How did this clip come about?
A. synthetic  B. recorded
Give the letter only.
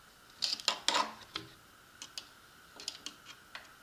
B